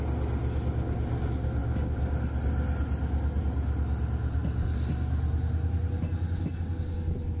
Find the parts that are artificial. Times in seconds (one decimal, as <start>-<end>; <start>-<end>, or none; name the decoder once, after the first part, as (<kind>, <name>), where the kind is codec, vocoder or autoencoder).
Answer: none